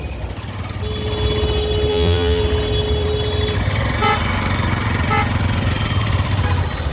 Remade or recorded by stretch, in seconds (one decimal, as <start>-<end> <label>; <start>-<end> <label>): 0.0-1.9 recorded; 1.9-2.4 remade; 2.4-6.9 recorded